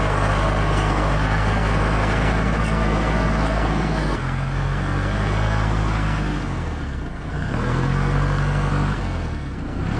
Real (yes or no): no